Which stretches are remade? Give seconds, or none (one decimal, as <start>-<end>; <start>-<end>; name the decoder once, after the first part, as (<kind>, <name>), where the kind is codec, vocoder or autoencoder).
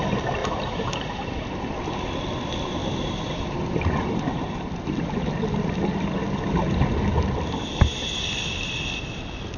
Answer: 0.4-1.7 (vocoder, BigVGAN v2); 2.8-4.7